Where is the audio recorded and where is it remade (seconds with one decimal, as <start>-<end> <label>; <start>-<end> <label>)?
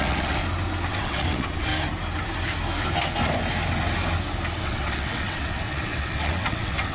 0.0-0.4 remade; 0.4-0.9 recorded; 0.9-1.7 remade; 1.7-4.6 recorded; 4.6-6.9 remade